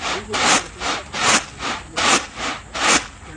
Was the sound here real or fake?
real